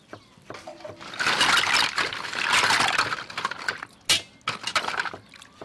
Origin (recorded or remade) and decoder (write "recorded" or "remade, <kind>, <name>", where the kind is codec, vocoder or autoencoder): recorded